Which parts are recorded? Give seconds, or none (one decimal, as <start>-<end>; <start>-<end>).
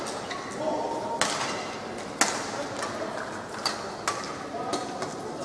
0.0-5.4